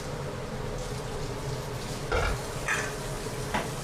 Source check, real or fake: real